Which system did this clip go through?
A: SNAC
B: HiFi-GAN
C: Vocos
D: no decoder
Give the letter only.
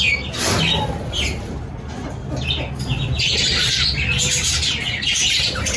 D